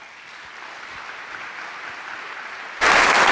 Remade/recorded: recorded